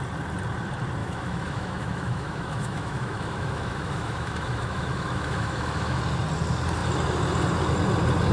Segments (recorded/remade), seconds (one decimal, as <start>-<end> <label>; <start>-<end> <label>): 0.0-1.0 recorded; 1.0-6.0 remade; 6.0-8.3 recorded